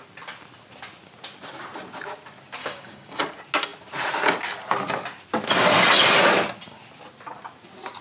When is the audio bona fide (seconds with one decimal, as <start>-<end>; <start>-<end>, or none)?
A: 0.0-2.6; 3.2-8.0

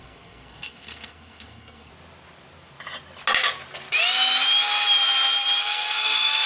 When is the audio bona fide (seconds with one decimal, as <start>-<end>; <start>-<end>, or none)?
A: 1.9-5.6

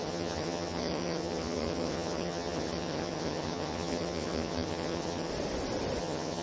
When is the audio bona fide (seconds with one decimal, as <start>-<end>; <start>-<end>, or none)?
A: 5.3-6.0

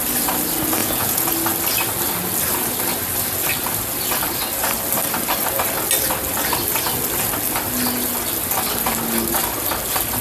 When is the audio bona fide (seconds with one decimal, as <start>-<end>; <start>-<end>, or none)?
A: 0.0-0.8; 1.3-10.2